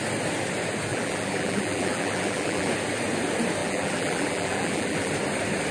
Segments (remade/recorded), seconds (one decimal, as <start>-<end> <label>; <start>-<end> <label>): 0.0-0.9 recorded; 0.9-2.7 remade; 2.7-3.6 recorded; 3.6-5.1 remade; 5.1-5.7 recorded